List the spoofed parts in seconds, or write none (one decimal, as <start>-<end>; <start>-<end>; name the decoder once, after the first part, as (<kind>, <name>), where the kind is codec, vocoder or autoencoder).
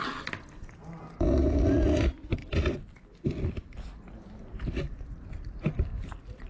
2.4-4.3 (vocoder, BigVGAN v2); 5.9-6.5